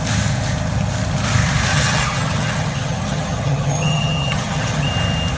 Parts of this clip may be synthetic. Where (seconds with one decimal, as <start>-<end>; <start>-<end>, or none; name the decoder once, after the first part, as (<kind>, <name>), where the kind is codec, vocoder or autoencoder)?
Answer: 1.7-4.9 (vocoder, HiFi-GAN)